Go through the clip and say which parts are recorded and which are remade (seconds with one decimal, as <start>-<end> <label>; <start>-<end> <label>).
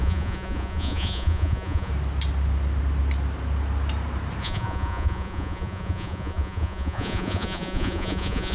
0.0-1.9 remade; 1.9-4.4 recorded; 4.4-8.5 remade